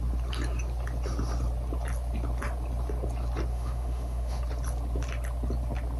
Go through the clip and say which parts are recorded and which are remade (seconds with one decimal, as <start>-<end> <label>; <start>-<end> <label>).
0.0-3.5 recorded; 3.5-4.4 remade; 4.4-6.0 recorded